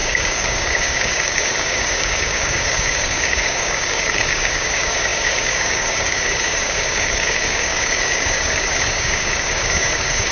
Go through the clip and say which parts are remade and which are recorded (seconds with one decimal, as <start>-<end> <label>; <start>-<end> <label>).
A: 0.0-10.3 remade